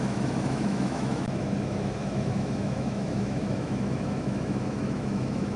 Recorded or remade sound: remade